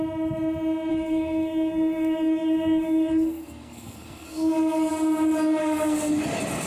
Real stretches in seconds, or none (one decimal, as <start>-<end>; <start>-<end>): 0.0-0.9; 4.9-5.6; 6.1-6.7